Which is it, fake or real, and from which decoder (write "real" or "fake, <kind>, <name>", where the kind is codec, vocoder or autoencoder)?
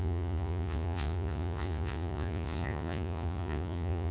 fake, vocoder, Vocos